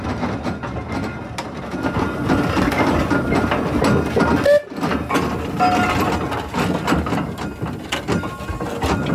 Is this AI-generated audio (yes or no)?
no